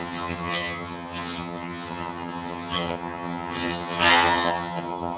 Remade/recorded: remade